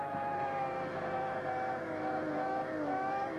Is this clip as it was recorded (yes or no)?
no